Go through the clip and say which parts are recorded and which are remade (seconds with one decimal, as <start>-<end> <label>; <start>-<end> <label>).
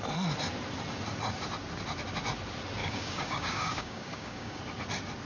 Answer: 0.0-2.8 recorded; 2.8-4.6 remade; 4.6-5.2 recorded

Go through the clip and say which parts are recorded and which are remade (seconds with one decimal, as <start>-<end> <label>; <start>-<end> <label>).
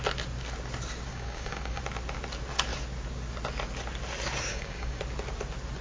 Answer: 0.0-1.1 recorded; 1.1-1.8 remade; 1.8-4.5 recorded; 4.5-5.0 remade; 5.0-5.8 recorded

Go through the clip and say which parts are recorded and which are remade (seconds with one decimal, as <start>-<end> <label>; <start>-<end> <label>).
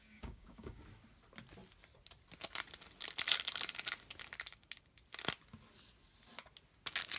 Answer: 0.0-0.8 remade; 0.8-7.2 recorded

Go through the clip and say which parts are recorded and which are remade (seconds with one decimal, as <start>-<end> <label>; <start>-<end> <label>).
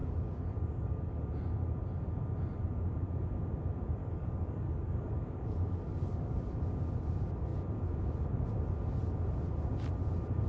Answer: 0.0-1.2 remade; 1.2-4.0 recorded; 4.0-6.6 remade; 6.6-10.5 recorded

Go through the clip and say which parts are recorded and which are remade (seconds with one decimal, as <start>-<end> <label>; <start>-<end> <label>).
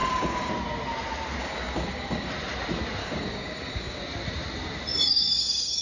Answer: 0.0-0.5 remade; 0.5-1.4 recorded; 1.4-2.3 remade; 2.3-3.0 recorded; 3.0-4.0 remade; 4.0-4.9 recorded; 4.9-5.8 remade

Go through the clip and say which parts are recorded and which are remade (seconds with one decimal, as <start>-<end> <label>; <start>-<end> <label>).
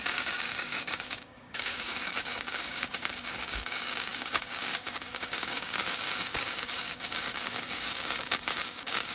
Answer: 0.0-9.1 remade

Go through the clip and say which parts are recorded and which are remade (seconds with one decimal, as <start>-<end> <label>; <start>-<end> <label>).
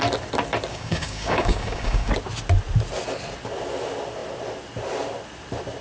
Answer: 0.0-0.7 recorded; 0.7-2.1 remade; 2.1-5.8 recorded